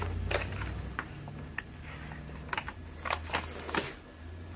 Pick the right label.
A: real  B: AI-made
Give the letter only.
A